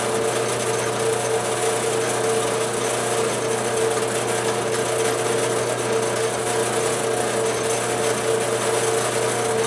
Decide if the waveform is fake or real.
real